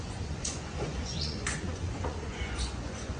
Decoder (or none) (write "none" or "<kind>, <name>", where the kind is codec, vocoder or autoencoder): vocoder, Vocos